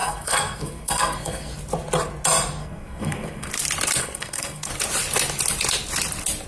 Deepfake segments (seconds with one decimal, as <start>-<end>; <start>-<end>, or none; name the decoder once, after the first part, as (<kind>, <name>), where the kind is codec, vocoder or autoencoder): 0.0-1.5 (codec, SNAC); 2.6-3.5; 4.0-4.7